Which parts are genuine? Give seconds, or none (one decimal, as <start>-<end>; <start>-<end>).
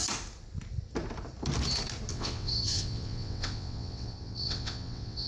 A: 0.0-2.1